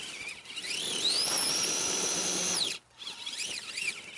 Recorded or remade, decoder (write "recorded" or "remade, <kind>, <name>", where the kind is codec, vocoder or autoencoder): recorded